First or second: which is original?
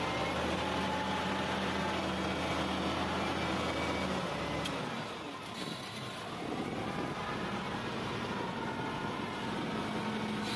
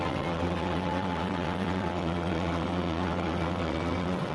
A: first